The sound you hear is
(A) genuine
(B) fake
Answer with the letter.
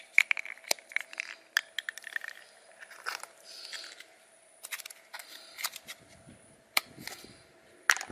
A